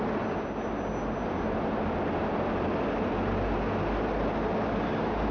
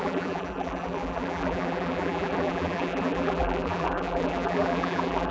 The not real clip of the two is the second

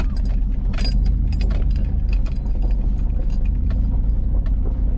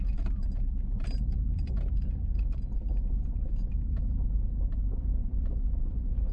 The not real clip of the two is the second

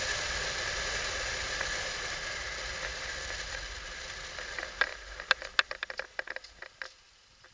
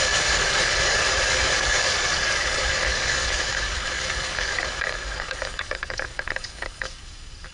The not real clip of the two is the second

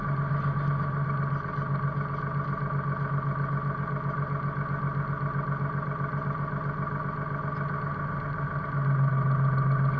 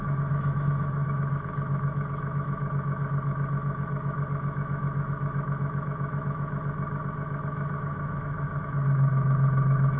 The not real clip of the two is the second